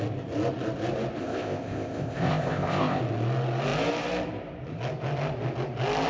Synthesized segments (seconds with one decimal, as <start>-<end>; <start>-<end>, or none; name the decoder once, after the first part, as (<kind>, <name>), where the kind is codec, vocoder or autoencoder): 1.2-3.0 (codec, ZipCodec)

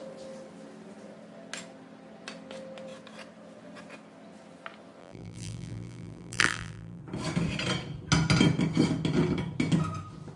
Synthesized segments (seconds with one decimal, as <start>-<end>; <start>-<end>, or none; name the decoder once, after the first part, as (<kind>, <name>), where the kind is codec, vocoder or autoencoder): 5.0-7.0 (vocoder, BigVGAN v2)

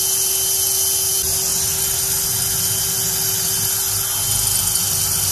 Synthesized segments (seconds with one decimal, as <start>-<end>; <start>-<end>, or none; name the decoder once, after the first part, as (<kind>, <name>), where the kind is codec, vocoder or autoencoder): none

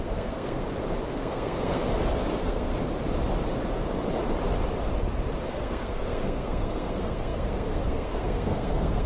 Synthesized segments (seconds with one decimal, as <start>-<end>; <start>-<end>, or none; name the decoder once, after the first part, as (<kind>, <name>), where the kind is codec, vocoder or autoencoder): 0.0-0.6 (codec, SNAC); 1.1-1.8; 2.3-2.7; 5.4-9.1

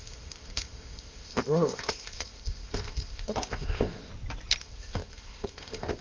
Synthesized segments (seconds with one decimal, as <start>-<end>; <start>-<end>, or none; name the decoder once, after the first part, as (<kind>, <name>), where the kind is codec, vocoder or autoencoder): 0.0-4.1 (codec, ZipCodec); 4.6-6.0

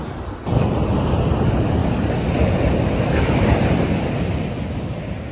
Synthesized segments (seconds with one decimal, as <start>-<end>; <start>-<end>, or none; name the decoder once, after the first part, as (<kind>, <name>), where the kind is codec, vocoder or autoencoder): none